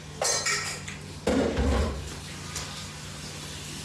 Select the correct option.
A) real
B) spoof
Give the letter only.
A